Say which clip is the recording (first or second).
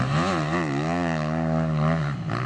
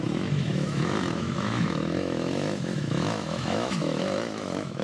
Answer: first